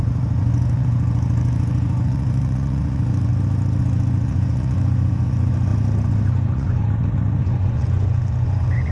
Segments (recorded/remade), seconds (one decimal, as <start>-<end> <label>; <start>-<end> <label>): 0.0-3.3 remade; 3.3-3.8 recorded; 3.8-5.7 remade; 5.7-6.3 recorded; 6.3-6.8 remade; 6.8-7.4 recorded; 7.4-8.9 remade